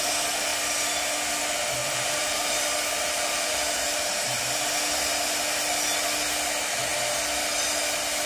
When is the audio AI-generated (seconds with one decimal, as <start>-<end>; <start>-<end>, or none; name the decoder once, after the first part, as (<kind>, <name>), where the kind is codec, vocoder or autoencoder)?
1.8-4.4 (vocoder, BigVGAN v2)